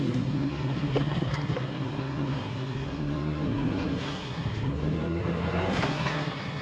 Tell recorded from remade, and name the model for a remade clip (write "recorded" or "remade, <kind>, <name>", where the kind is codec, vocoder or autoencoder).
remade, codec, SNAC